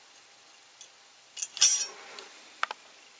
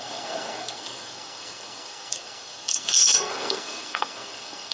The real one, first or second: first